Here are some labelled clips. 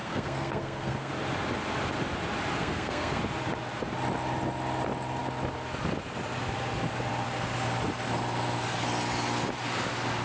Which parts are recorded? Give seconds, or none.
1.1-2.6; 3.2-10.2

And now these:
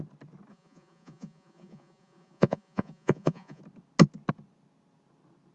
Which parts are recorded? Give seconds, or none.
0.0-0.5; 3.6-5.5

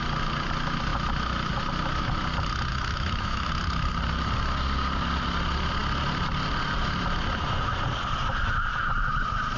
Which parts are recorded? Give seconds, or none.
0.0-2.7; 3.5-9.6

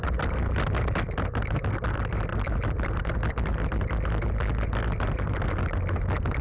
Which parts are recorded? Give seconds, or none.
0.0-6.4

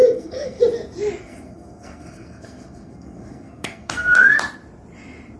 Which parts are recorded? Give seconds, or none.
0.6-1.2; 4.4-5.4